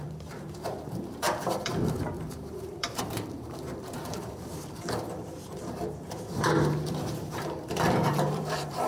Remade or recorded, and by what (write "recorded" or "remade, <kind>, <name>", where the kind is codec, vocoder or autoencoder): remade, vocoder, BigVGAN v2